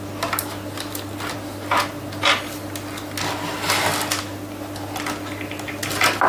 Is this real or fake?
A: real